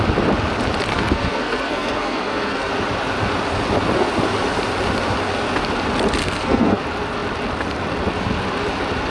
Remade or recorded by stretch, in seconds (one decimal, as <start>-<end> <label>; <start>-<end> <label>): 0.0-0.9 recorded; 0.9-2.7 remade; 2.7-6.2 recorded; 6.2-6.8 remade; 6.8-9.1 recorded